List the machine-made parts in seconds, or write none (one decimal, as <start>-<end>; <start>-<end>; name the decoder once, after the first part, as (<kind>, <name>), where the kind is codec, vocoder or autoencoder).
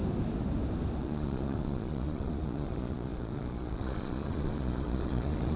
1.0-5.6 (vocoder, Vocos)